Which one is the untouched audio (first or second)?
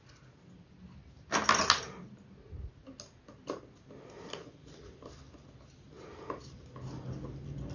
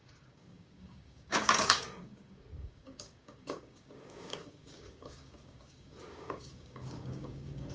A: first